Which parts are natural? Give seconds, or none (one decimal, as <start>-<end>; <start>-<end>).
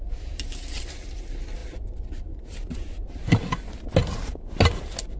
0.0-5.2